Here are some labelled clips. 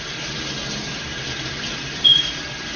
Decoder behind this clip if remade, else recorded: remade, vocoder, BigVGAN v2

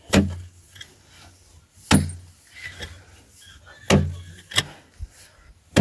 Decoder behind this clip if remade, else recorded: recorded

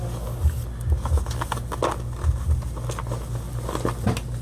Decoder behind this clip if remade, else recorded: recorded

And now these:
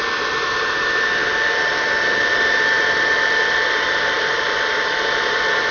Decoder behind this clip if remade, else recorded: recorded